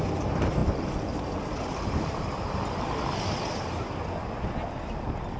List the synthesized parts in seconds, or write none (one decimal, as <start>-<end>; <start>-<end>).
none